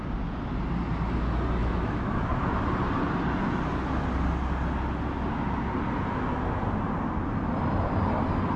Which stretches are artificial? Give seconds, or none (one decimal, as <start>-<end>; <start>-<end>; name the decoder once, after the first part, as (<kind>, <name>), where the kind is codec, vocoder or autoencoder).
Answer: 1.6-2.3 (autoencoder, DAC-VAE)